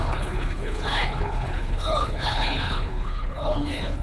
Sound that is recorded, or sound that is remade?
remade